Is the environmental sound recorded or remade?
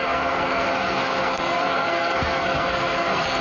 remade